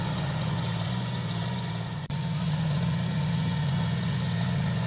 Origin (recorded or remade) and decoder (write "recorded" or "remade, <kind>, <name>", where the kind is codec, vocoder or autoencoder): remade, vocoder, Vocos